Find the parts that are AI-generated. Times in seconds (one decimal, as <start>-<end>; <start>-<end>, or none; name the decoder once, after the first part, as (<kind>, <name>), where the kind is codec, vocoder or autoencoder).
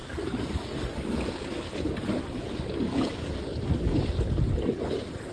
0.0-1.5 (codec, DAC); 2.4-4.0